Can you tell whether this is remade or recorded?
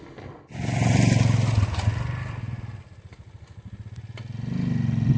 recorded